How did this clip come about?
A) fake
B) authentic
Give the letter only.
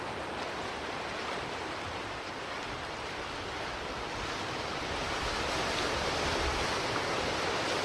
B